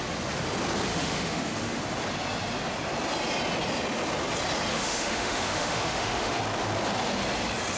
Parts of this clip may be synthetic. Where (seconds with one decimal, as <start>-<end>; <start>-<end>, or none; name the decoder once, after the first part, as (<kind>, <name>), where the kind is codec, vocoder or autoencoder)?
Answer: 0.9-1.8 (autoencoder, DAC-VAE); 4.7-6.4